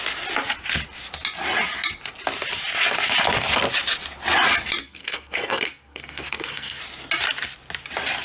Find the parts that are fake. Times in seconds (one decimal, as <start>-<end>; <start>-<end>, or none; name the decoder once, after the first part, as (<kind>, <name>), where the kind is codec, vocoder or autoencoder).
4.8-6.8 (codec, SNAC)